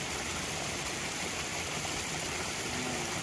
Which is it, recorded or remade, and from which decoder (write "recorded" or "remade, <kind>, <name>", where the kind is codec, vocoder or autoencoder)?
recorded